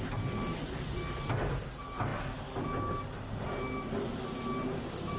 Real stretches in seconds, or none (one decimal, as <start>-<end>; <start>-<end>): 0.0-5.2